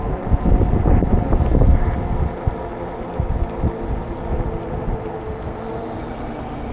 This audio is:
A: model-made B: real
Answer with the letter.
B